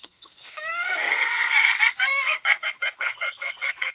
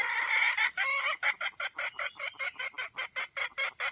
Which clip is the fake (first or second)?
first